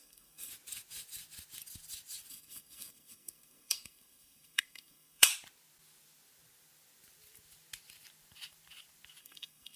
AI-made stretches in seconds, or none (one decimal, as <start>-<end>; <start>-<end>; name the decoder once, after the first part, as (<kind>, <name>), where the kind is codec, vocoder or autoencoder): 0.0-0.5 (codec, SNAC); 2.3-5.3; 9.2-9.8